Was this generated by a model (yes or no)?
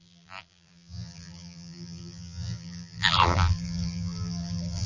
yes